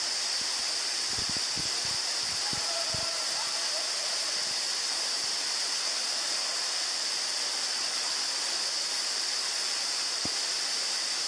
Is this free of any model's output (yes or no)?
yes